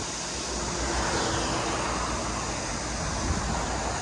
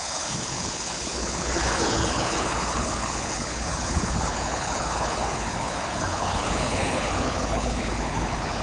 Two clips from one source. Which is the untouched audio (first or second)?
first